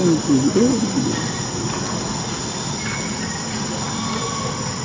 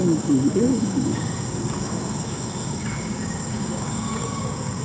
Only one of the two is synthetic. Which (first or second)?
second